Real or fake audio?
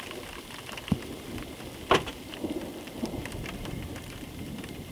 real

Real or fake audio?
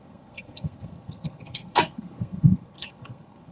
fake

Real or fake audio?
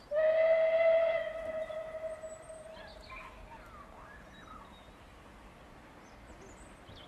real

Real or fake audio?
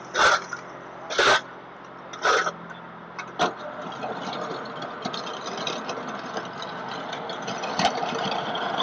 real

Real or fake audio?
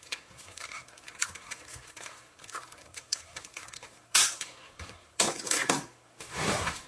fake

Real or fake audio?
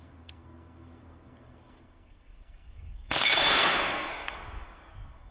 fake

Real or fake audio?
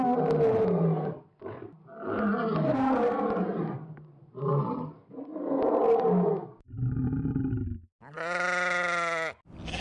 real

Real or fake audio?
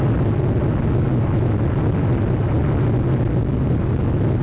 real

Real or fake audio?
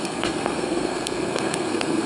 fake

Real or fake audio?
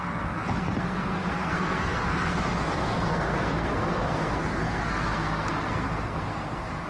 fake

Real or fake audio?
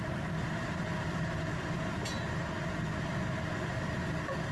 real